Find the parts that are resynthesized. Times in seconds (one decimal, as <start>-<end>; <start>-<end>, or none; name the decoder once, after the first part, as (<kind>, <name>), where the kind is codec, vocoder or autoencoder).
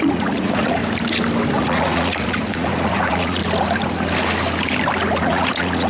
0.0-0.8 (vocoder, Vocos); 1.5-3.4; 5.2-5.9